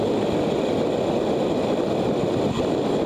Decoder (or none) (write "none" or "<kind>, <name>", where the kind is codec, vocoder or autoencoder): none